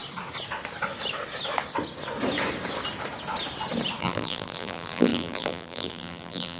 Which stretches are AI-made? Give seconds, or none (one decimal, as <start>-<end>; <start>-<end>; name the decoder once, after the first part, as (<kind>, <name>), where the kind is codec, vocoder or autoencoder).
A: 4.0-6.6 (vocoder, BigVGAN v2)